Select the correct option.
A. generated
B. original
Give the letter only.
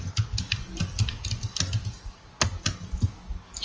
B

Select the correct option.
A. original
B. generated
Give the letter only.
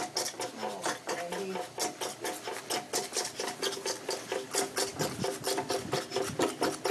A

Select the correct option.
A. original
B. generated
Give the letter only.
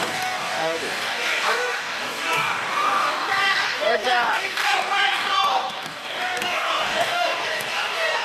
B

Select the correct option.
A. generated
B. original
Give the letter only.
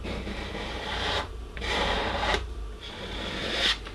A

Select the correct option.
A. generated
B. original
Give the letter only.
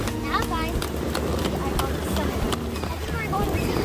B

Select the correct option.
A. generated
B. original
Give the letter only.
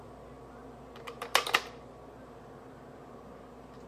B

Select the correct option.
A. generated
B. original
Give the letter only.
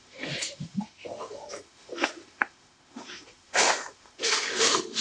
A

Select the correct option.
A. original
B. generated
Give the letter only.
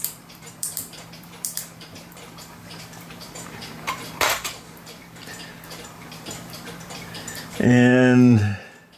B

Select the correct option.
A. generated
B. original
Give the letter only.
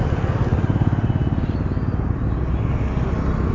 B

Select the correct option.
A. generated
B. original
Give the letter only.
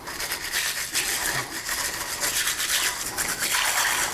B